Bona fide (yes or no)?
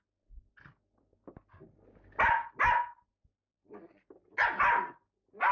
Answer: yes